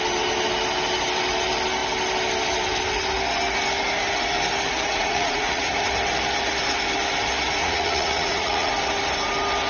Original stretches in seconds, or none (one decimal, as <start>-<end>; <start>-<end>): 0.0-4.9; 5.7-7.6; 8.7-9.7